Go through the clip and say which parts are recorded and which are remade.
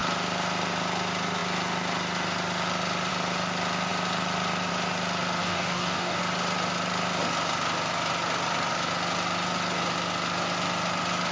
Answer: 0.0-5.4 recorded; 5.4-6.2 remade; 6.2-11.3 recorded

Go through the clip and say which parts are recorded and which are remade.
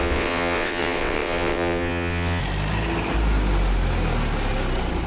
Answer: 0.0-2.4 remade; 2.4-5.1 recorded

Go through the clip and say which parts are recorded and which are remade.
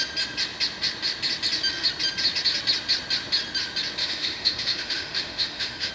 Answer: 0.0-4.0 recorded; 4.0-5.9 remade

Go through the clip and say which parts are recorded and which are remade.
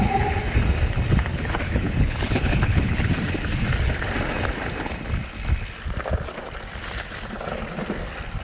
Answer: 0.0-1.3 recorded; 1.3-3.1 remade; 3.1-8.4 recorded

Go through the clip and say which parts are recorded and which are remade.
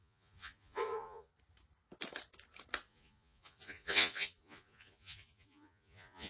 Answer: 0.0-1.3 remade; 1.3-2.9 recorded; 2.9-6.3 remade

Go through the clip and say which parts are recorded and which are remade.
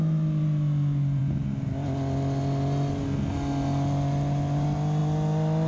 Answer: 0.0-5.7 recorded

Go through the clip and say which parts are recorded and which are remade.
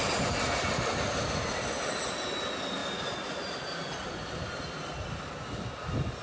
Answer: 0.0-6.2 recorded